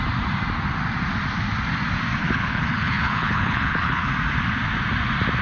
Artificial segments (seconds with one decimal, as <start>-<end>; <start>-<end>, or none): 2.2-4.1